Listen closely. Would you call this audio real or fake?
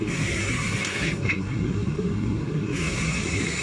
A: fake